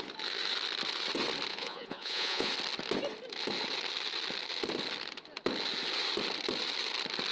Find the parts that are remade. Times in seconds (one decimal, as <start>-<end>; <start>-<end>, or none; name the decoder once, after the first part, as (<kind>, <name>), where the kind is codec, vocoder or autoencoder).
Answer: 1.5-2.5 (vocoder, Vocos)